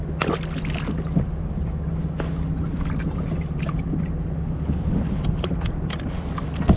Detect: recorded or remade recorded